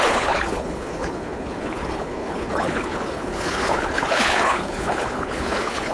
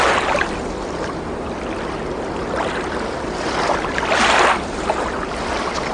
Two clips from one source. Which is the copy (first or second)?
first